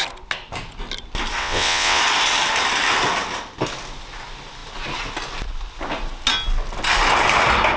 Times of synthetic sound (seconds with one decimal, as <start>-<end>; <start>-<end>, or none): 1.4-2.0